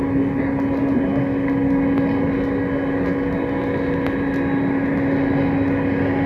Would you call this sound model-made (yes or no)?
no